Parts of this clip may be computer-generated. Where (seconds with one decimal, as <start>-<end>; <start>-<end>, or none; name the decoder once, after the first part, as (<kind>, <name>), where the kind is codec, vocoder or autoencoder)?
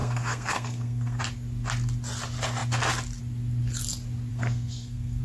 0.0-1.2 (codec, SNAC); 4.3-5.2